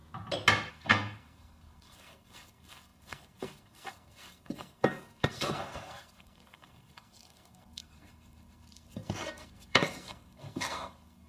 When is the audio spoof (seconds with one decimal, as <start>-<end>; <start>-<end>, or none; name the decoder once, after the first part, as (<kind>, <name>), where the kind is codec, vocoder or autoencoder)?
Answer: 0.7-11.3 (codec, SNAC)